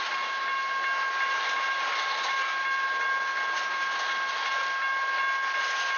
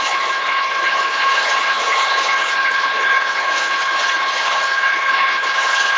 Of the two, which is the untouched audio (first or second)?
first